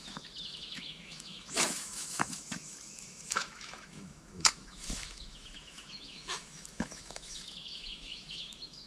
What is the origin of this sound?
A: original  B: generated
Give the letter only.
B